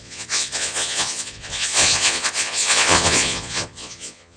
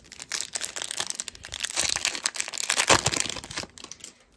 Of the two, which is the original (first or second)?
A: second